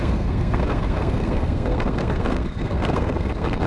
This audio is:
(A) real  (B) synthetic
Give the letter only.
B